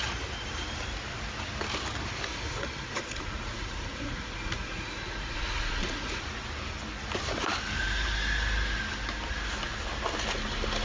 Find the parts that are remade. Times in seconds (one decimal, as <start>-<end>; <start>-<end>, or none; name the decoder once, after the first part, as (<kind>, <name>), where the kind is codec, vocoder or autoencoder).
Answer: 2.3-6.2 (vocoder, Vocos)

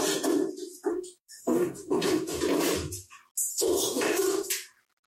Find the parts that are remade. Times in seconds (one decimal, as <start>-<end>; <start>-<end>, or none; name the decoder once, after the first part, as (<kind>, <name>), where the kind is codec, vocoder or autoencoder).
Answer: 0.9-2.4 (codec, DAC); 3.5-4.5

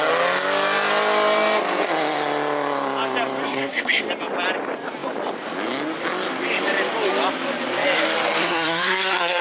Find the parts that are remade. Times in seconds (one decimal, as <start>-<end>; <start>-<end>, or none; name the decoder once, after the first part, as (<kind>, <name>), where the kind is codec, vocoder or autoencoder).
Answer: 3.4-4.0 (codec, SNAC); 8.4-9.4

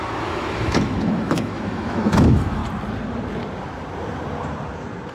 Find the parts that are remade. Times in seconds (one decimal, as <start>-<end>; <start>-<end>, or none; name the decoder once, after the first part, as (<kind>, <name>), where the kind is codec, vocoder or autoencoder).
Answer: 0.0-2.6 (autoencoder, DAC-VAE)

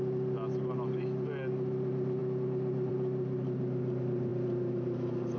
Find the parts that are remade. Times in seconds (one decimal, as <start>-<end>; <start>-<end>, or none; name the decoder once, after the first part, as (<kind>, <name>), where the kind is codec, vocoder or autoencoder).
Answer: none

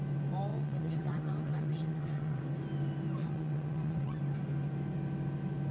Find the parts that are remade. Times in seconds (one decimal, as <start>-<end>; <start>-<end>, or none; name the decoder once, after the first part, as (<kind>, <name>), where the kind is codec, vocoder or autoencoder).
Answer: 0.5-2.4 (vocoder, WaveNeXt); 3.2-4.2

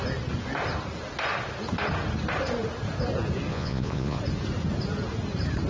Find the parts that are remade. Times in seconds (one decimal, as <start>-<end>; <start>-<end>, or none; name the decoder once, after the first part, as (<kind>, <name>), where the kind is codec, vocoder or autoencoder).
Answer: 3.5-4.2 (vocoder, Vocos)